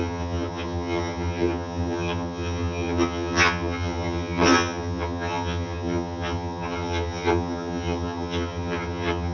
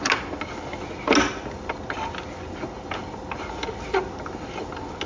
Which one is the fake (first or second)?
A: first